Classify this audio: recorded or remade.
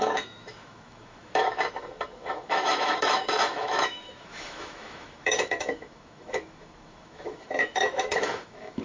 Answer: remade